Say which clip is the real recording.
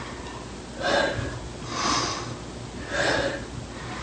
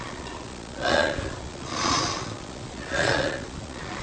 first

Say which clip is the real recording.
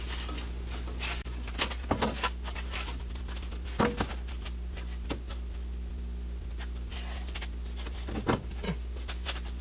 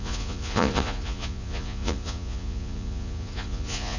first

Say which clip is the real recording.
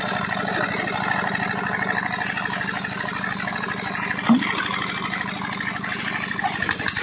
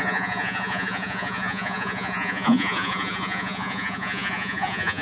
first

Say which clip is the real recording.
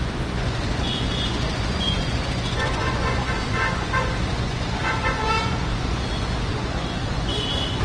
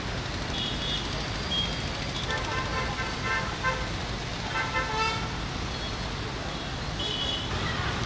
second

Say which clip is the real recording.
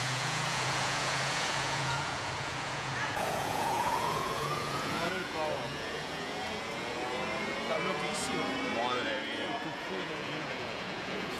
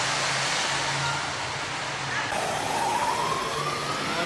second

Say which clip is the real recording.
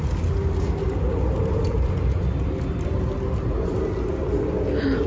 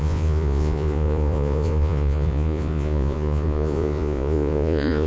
first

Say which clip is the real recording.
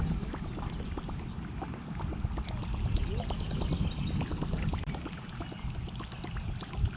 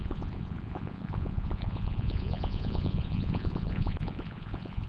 first